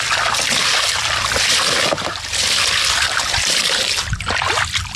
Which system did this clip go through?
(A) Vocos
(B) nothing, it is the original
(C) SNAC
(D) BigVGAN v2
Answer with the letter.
B